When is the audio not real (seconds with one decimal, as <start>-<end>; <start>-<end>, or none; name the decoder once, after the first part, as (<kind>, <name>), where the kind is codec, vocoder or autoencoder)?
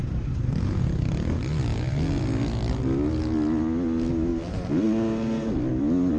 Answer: none